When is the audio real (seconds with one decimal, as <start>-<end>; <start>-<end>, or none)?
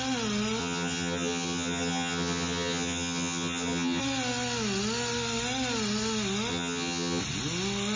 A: 0.0-0.6; 4.0-6.5; 7.2-8.0